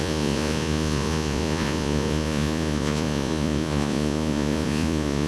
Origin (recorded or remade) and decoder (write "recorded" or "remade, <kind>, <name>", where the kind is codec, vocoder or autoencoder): remade, vocoder, Vocos